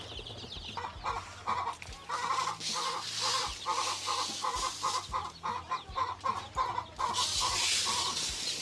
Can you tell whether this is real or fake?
real